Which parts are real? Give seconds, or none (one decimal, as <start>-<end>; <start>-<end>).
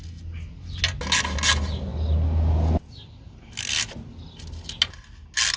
0.0-5.6